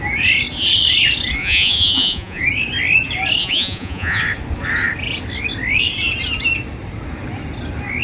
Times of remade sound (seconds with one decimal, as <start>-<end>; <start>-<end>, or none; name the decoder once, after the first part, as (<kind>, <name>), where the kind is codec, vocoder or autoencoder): 1.4-2.4 (vocoder, Vocos); 3.4-4.2